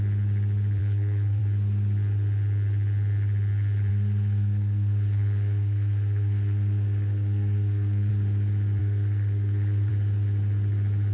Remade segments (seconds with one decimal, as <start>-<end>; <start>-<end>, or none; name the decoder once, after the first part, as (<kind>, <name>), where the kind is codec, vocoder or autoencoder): 0.8-1.4 (codec, SNAC); 3.9-8.1; 8.8-9.9